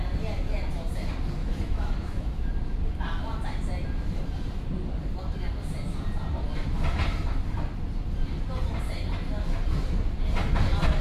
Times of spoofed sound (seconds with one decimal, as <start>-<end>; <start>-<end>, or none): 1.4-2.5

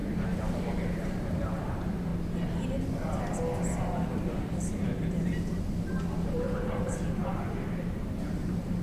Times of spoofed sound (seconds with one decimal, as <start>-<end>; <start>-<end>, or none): 0.0-2.1; 3.9-7.2; 8.3-8.8

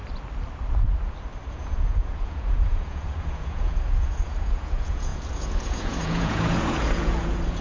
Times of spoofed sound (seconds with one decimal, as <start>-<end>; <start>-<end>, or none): 1.5-7.6

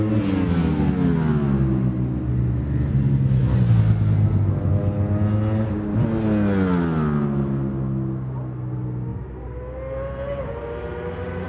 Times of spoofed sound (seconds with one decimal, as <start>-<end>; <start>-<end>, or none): none